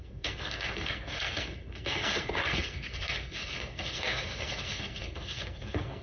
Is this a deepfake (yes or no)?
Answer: yes